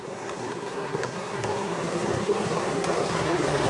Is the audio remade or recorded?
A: remade